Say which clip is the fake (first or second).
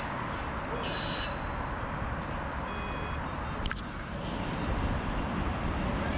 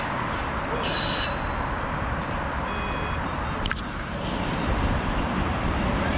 second